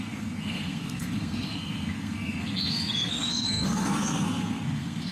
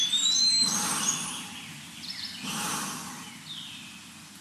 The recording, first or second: second